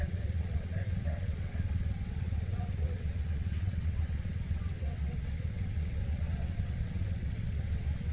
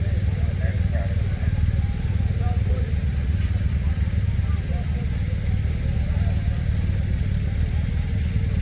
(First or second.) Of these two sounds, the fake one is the first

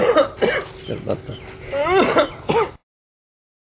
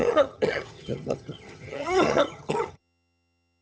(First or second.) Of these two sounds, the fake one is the second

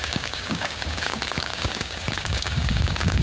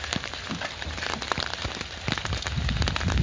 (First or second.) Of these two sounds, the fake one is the first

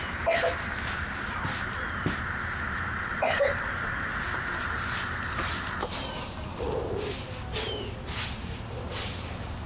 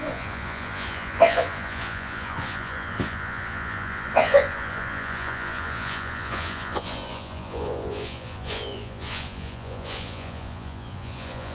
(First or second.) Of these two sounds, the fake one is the second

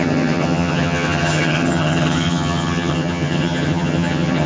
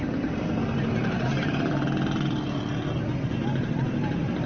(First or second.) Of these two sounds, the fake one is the first